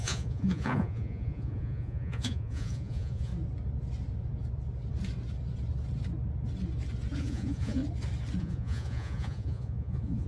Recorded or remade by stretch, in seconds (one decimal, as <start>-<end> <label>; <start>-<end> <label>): 0.0-3.3 remade; 3.3-7.2 recorded; 7.2-7.8 remade; 7.8-8.4 recorded; 8.4-10.3 remade